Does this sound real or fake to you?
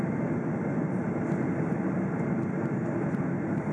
real